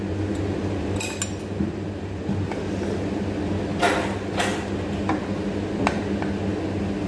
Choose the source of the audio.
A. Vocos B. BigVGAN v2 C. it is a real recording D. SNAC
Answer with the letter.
C